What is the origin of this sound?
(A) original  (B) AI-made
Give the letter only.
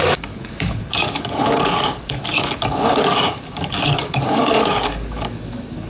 B